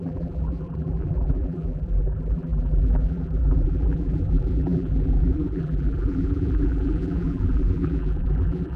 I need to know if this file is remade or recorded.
remade